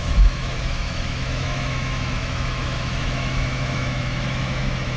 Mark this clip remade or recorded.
remade